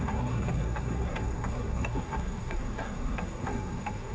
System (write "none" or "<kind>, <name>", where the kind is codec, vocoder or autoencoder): codec, SNAC